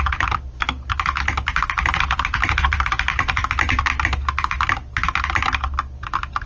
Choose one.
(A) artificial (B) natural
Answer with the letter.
B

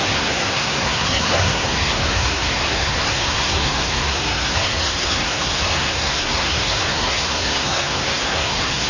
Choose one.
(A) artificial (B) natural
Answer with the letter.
A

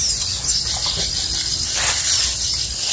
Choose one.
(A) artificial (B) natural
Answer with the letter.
B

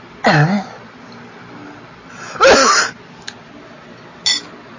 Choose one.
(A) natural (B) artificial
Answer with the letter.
A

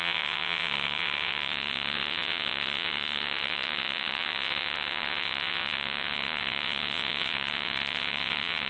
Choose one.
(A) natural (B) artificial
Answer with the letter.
B